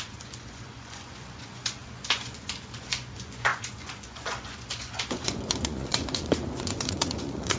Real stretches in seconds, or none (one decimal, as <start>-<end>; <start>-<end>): none